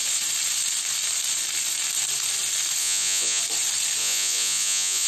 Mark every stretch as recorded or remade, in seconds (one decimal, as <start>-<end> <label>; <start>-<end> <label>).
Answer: 0.0-2.8 recorded; 2.8-3.4 remade; 3.4-4.0 recorded; 4.0-5.1 remade